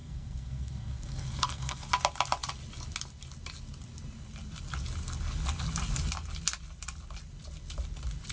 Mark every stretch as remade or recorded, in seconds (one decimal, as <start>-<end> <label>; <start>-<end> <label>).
0.0-1.9 remade; 1.9-8.3 recorded